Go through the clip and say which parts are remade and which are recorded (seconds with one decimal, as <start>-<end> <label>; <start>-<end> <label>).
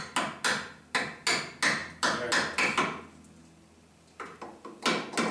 0.0-5.3 recorded